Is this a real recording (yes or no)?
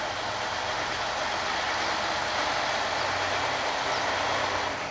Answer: yes